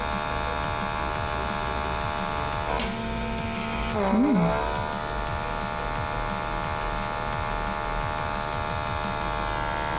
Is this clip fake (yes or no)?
no